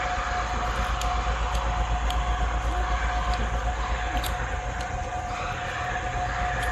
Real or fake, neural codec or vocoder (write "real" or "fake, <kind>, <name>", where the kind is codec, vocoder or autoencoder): real